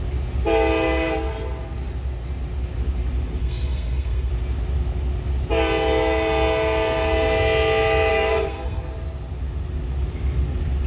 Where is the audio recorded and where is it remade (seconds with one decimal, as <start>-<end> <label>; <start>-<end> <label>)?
0.0-3.4 recorded; 3.4-4.3 remade; 4.3-8.1 recorded; 8.1-8.8 remade; 8.8-10.9 recorded